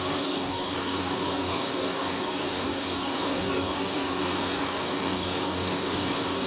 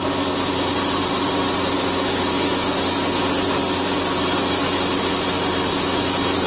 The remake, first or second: first